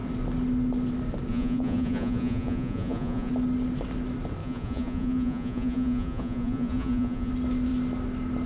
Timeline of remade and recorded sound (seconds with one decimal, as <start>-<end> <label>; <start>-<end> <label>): 0.0-1.3 recorded; 1.3-3.3 remade; 3.3-4.4 recorded; 4.4-7.3 remade; 7.3-8.5 recorded